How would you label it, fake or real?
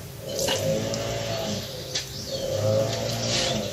real